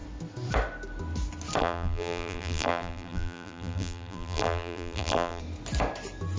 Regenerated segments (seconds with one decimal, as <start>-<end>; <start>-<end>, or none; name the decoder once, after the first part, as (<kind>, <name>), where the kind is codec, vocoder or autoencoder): 1.6-5.4 (vocoder, BigVGAN v2)